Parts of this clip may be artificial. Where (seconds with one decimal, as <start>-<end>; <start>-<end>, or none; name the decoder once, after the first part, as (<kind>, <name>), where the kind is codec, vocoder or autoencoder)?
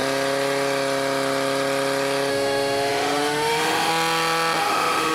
2.3-3.9 (autoencoder, DAC-VAE); 4.6-5.1